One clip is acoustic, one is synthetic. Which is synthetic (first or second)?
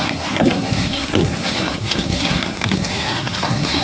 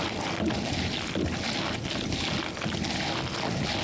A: first